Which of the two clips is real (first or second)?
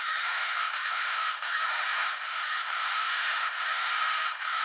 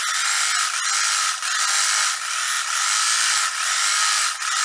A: second